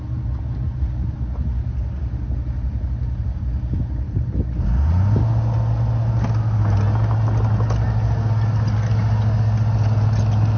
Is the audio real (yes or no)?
yes